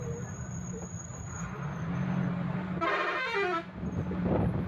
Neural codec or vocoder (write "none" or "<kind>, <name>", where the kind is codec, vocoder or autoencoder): none